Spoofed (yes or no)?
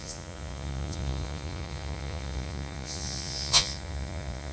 yes